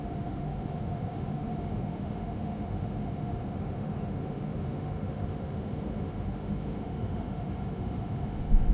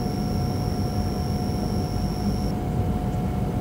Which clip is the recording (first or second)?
second